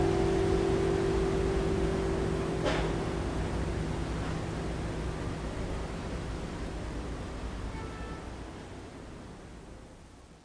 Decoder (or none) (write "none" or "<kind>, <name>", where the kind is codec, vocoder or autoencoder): none